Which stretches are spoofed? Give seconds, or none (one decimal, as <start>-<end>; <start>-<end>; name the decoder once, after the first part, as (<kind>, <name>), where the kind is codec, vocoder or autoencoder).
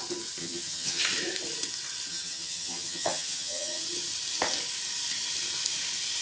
0.4-1.0 (vocoder, HiFi-GAN); 2.1-3.8